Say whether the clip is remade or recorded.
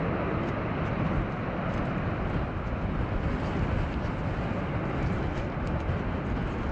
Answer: recorded